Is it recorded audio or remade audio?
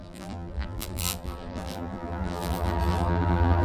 remade